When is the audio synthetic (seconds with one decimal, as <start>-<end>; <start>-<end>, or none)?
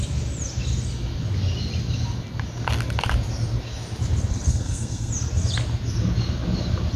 4.5-5.1